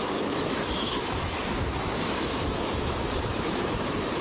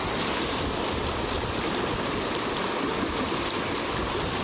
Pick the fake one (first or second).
first